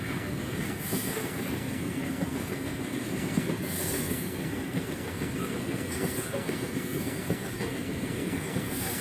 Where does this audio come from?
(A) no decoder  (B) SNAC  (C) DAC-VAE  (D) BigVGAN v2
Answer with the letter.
B